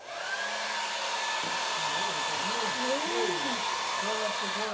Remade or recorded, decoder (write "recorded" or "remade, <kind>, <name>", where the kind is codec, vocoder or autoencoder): recorded